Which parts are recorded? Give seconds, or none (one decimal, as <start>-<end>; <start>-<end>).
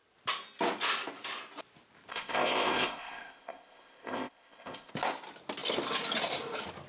0.0-2.1; 4.9-6.9